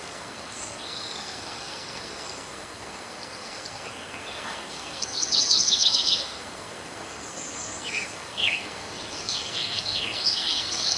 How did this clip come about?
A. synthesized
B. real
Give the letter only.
A